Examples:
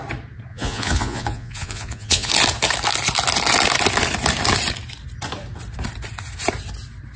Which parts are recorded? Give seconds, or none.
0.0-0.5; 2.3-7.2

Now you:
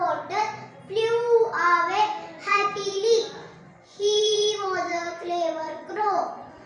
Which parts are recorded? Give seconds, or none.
0.0-2.4

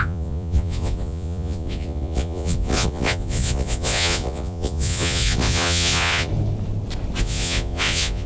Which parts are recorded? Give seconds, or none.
6.3-7.2

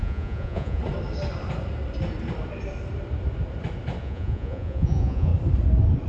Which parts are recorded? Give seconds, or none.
0.8-4.0; 5.3-6.1

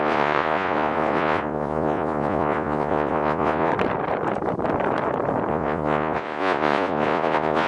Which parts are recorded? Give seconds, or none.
3.7-5.5